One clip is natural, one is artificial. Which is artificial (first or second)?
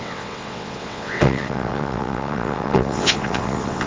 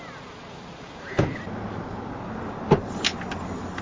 first